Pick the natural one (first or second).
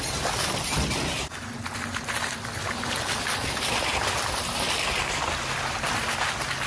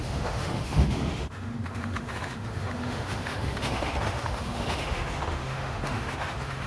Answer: first